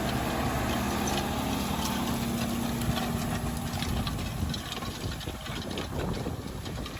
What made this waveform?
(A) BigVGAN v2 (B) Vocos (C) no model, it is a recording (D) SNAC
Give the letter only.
C